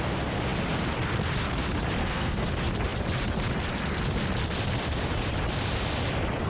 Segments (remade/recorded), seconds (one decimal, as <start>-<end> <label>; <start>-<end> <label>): 0.0-2.0 recorded; 2.0-2.5 remade; 2.5-6.5 recorded